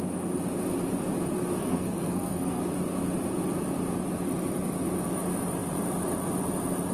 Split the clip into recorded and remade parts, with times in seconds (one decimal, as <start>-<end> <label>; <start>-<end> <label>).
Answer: 0.0-1.6 recorded; 1.6-2.6 remade; 2.6-6.9 recorded